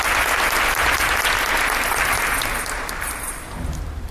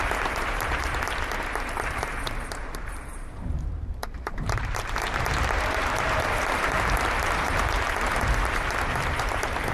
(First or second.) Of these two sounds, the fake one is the second